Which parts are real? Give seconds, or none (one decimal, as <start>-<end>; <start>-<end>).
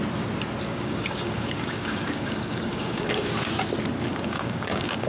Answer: 0.0-0.7; 3.3-4.1